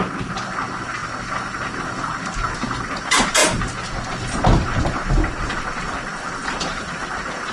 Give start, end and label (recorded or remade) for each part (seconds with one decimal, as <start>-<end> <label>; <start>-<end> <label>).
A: 0.0-7.5 recorded